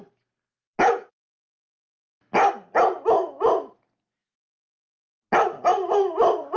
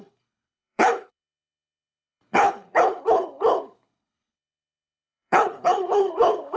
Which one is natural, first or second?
first